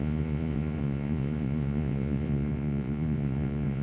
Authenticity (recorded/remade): remade